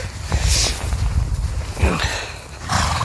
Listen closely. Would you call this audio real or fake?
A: real